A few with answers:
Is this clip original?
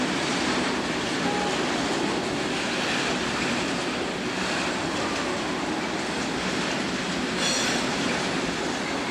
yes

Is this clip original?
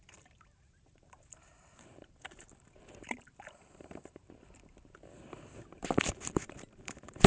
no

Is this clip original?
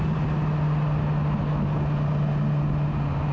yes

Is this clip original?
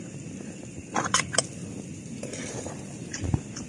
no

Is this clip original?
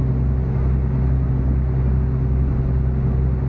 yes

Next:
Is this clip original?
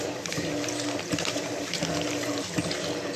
no